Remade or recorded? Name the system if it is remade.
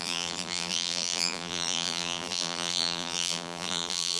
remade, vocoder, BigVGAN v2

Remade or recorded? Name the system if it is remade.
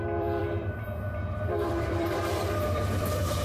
remade, vocoder, BigVGAN v2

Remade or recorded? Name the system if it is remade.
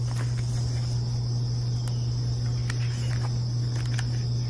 recorded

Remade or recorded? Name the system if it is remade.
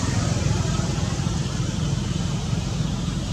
remade, vocoder, BigVGAN v2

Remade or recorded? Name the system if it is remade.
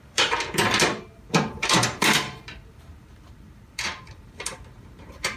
remade, vocoder, BigVGAN v2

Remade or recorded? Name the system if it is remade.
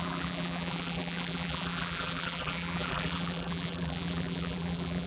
remade, vocoder, BigVGAN v2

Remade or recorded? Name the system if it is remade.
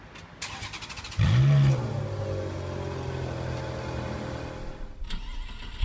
recorded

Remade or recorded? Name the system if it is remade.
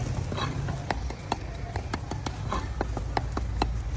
recorded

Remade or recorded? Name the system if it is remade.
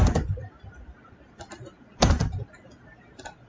remade, vocoder, BigVGAN v2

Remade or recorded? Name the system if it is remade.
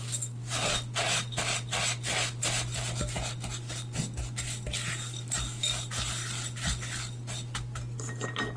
recorded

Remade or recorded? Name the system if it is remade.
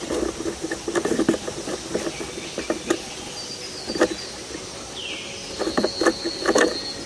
recorded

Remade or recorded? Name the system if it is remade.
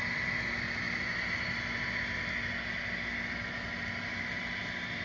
recorded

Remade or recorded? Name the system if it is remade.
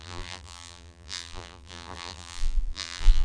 remade, vocoder, BigVGAN v2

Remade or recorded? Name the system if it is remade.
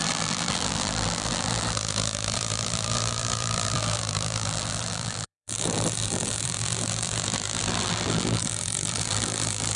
remade, vocoder, BigVGAN v2